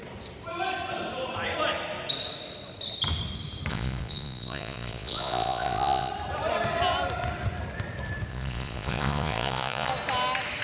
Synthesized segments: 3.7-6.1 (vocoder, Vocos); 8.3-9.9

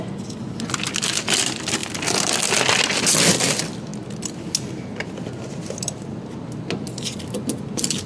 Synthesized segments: none